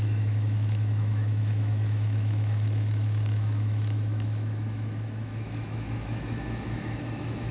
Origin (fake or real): fake